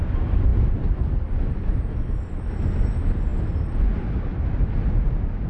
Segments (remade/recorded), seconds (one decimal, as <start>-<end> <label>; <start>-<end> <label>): 0.0-5.5 recorded